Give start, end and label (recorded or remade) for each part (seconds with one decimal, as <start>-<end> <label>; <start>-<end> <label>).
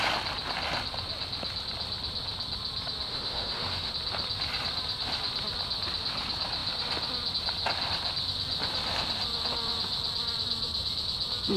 0.0-3.1 recorded; 3.1-3.9 remade; 3.9-11.6 recorded